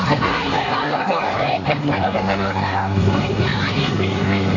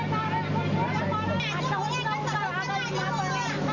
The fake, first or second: first